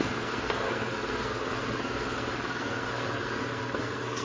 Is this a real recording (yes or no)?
no